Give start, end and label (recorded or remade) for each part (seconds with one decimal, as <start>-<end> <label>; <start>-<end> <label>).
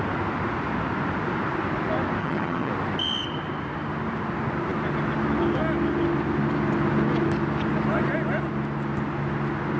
0.0-2.2 recorded; 2.2-2.7 remade; 2.7-9.8 recorded